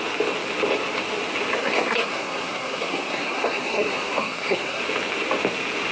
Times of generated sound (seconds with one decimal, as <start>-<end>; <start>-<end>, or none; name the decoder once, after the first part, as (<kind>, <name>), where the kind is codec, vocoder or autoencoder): 1.6-4.8 (codec, SNAC)